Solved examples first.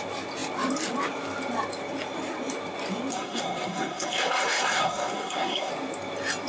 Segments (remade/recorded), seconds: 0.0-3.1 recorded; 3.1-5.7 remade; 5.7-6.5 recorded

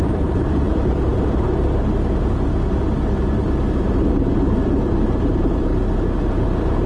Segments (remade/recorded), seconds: 0.0-1.1 remade; 1.1-3.8 recorded; 3.8-5.7 remade; 5.7-6.3 recorded; 6.3-6.9 remade